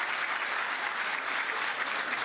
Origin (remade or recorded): recorded